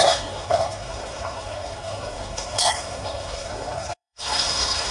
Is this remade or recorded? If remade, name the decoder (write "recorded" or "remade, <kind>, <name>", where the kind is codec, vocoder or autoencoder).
remade, codec, SNAC